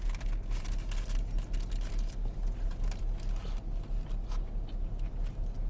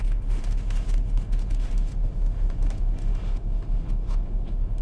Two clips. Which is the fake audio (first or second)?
second